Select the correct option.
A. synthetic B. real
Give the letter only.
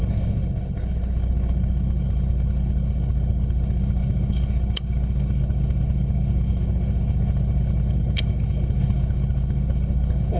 A